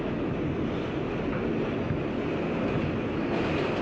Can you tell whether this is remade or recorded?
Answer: recorded